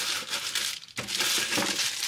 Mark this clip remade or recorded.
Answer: recorded